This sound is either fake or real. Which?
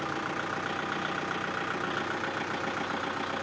real